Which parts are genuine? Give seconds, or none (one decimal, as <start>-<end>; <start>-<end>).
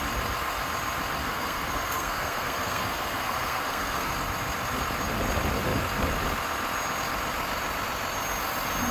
0.0-1.2; 4.1-8.9